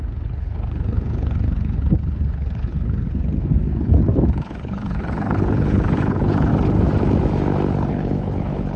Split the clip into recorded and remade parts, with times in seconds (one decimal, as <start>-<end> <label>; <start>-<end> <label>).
0.0-6.5 remade; 6.5-7.9 recorded; 7.9-8.8 remade